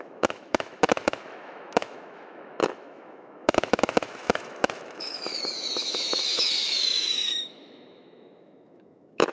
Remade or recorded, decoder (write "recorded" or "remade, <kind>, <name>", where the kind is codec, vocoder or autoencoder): remade, autoencoder, DAC-VAE